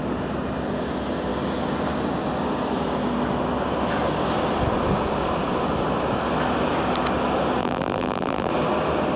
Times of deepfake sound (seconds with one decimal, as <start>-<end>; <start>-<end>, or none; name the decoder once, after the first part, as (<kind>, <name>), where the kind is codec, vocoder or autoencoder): 7.6-8.5 (vocoder, BigVGAN v2)